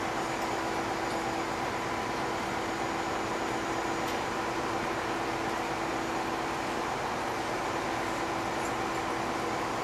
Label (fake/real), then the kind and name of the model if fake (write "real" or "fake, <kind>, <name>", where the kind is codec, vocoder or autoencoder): real